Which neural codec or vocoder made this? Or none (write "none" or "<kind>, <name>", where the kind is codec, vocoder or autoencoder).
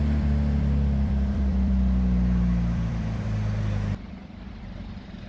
vocoder, BigVGAN v2